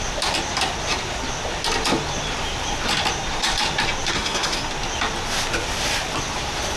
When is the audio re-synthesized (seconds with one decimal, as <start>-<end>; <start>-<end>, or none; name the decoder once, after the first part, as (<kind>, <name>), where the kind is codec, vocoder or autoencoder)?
4.1-4.7 (codec, SNAC)